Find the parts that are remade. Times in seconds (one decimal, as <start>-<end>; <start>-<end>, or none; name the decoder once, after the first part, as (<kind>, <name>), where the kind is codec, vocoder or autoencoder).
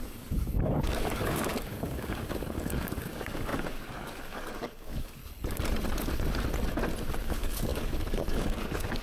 0.0-5.2 (codec, DAC); 7.2-9.0